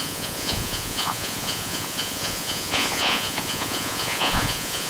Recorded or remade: remade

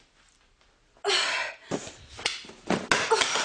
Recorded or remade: recorded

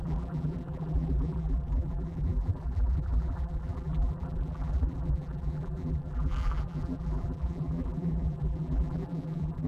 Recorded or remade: remade